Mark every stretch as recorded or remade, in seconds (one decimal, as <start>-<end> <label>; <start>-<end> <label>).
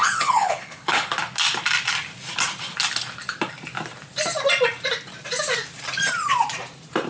0.0-1.1 remade; 1.1-7.1 recorded